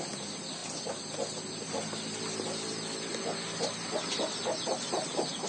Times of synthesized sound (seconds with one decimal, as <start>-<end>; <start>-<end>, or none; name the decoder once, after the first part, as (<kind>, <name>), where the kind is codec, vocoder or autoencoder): none